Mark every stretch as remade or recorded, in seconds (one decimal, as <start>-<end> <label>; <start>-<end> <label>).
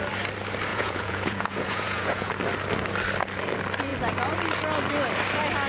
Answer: 0.0-0.7 recorded; 0.7-2.3 remade; 2.3-5.7 recorded